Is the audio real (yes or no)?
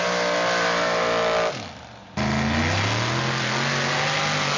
yes